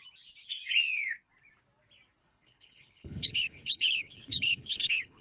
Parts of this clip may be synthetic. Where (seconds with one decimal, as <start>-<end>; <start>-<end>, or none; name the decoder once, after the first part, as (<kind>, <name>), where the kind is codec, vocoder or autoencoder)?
2.2-5.2 (codec, HILCodec)